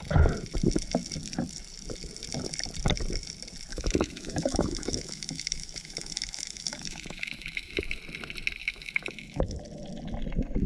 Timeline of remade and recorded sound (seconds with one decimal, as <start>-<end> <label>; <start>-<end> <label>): 0.0-3.7 recorded; 3.7-8.0 remade; 8.0-8.6 recorded; 8.6-9.6 remade; 9.6-10.7 recorded